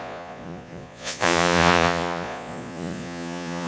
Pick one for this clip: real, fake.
fake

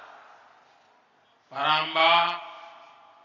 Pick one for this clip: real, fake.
real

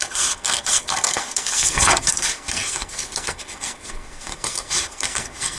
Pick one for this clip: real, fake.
fake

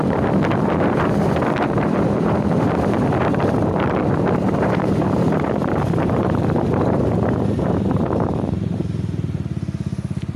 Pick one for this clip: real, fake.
fake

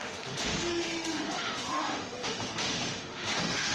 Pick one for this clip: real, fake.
fake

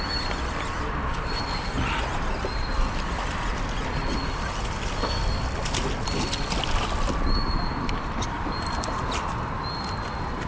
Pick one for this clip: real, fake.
real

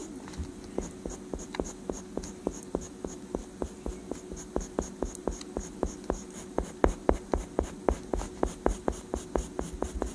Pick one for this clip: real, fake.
real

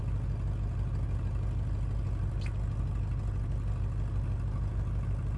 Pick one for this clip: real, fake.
real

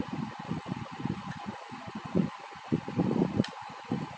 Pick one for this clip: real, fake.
fake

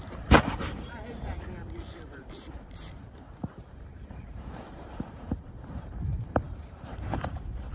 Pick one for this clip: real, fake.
fake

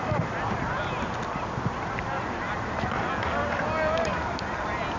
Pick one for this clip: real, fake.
real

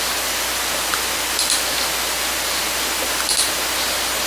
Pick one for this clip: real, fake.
real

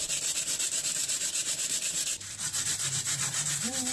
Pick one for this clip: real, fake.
fake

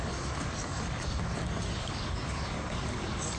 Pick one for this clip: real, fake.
fake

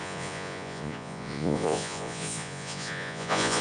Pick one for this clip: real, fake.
fake